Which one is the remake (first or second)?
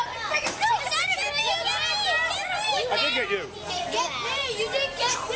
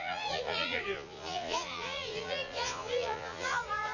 second